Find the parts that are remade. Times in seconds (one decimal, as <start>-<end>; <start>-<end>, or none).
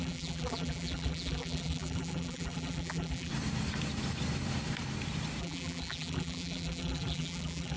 0.0-3.3; 5.4-7.8